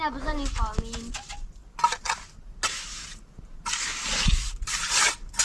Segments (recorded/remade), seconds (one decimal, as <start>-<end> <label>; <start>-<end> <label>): 0.0-5.4 recorded